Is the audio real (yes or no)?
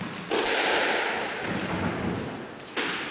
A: yes